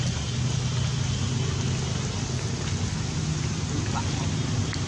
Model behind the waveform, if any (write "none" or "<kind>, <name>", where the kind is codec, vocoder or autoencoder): none